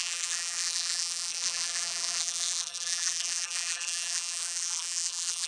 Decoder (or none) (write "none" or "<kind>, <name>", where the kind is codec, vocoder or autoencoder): vocoder, BigVGAN v2